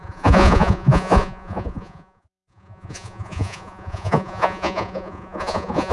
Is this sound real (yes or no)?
no